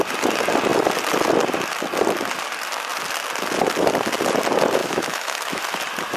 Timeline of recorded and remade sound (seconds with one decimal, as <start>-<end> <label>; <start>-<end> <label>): 0.0-4.8 recorded; 4.8-5.6 remade; 5.6-6.2 recorded